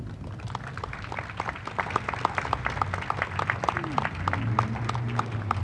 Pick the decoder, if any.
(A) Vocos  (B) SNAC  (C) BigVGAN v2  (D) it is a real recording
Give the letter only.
D